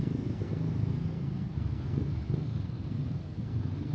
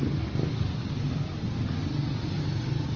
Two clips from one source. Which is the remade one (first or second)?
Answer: first